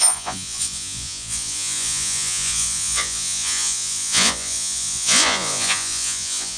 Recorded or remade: remade